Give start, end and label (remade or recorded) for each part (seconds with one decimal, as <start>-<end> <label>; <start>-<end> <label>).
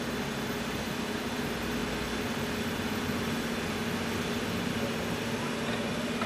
0.0-6.3 recorded